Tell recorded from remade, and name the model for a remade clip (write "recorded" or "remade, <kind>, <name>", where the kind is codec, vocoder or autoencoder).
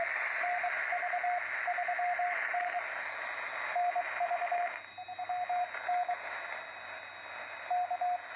recorded